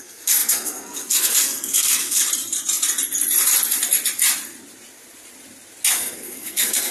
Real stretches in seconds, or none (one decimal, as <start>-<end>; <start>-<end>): 2.2-5.9